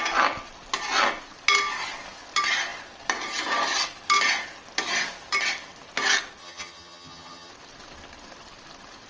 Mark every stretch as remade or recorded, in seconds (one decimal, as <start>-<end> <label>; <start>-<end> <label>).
0.0-6.4 recorded; 6.4-7.5 remade; 7.5-9.1 recorded